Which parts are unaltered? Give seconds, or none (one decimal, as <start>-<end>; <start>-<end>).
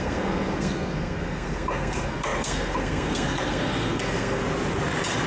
4.4-5.3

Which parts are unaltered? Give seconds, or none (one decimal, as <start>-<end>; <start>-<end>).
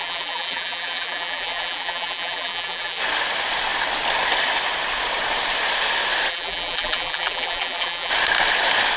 3.0-6.3; 8.1-9.0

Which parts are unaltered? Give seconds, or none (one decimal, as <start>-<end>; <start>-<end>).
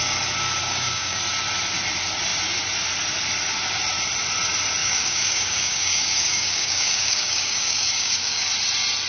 0.0-0.6; 1.2-4.8; 8.5-9.1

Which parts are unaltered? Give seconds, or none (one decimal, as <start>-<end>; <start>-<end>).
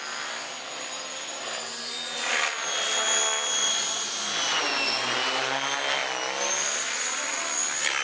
0.0-3.6; 4.6-8.0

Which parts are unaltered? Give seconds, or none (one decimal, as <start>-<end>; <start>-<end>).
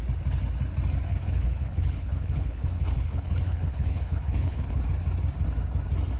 0.0-1.1; 4.8-6.2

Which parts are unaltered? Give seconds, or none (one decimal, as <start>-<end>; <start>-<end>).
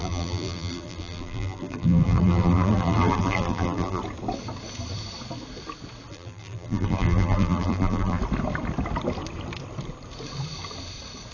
4.0-6.1; 8.2-11.3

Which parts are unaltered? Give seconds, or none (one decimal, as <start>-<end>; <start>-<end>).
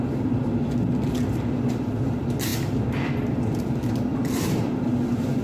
0.0-4.1; 4.7-5.4